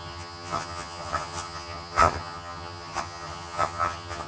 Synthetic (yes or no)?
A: yes